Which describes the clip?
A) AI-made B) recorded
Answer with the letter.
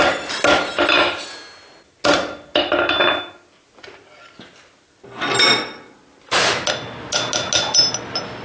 B